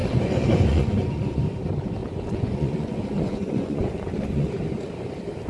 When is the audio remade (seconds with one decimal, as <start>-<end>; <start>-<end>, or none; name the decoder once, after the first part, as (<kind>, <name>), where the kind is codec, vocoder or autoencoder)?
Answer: 0.0-1.4 (vocoder, Vocos); 2.0-4.6